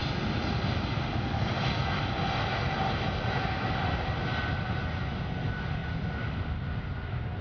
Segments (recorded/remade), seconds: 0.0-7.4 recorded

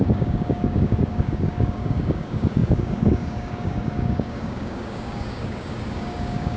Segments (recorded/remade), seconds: 0.0-6.6 remade

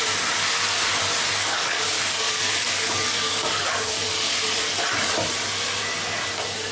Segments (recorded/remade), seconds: 0.0-1.4 recorded; 1.4-4.4 remade; 4.4-6.7 recorded

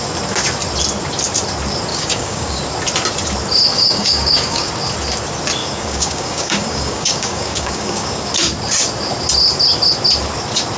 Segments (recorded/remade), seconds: 0.0-1.9 recorded; 1.9-2.6 remade; 2.6-3.7 recorded; 3.7-4.7 remade; 4.7-5.6 recorded; 5.6-8.3 remade; 8.3-10.8 recorded

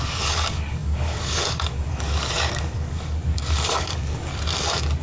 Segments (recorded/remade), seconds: 0.0-4.3 remade; 4.3-5.0 recorded

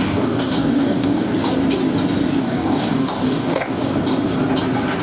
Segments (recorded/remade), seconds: 0.0-1.3 remade; 1.3-2.4 recorded; 2.4-3.9 remade; 3.9-5.0 recorded